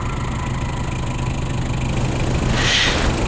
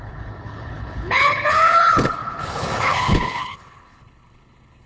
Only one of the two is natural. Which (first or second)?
first